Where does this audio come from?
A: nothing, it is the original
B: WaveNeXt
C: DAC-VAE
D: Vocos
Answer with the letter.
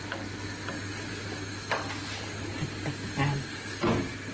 A